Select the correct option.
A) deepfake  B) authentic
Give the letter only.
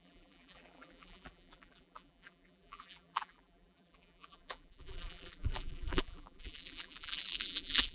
A